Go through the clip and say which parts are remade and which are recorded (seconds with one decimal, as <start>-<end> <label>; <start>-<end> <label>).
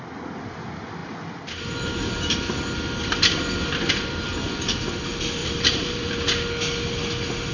0.0-5.4 recorded; 5.4-6.1 remade; 6.1-7.5 recorded